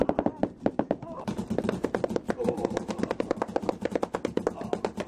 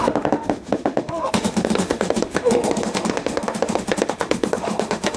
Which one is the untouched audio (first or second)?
first